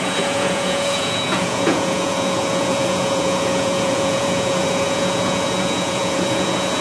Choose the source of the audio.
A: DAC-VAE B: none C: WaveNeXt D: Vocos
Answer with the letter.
D